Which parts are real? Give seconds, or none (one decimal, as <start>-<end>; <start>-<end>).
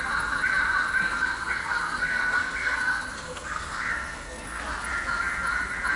0.0-1.0; 4.6-6.0